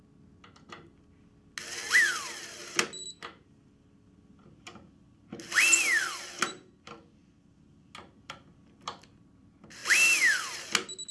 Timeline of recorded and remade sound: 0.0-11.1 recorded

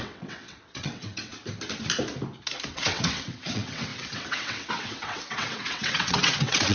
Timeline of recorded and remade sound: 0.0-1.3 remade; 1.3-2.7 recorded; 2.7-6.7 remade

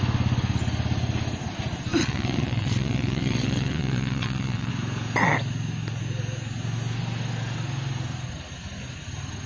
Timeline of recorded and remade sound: 0.0-2.0 recorded; 2.0-4.7 remade; 4.7-9.5 recorded